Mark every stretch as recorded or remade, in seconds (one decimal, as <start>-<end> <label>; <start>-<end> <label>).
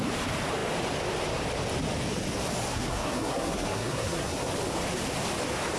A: 0.0-2.7 recorded; 2.7-4.5 remade; 4.5-5.8 recorded